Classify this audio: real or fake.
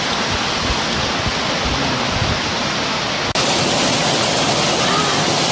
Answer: real